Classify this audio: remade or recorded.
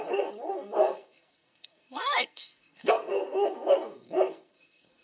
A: remade